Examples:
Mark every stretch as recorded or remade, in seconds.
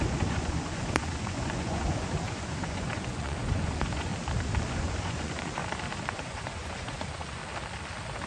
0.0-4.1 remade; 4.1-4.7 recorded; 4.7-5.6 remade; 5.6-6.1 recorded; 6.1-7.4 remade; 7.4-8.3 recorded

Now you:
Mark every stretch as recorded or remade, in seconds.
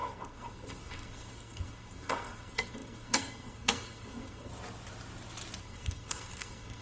0.0-4.5 remade; 4.5-5.6 recorded; 5.6-6.8 remade